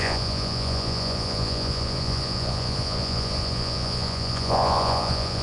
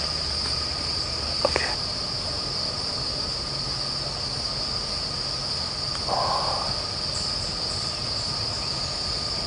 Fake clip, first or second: first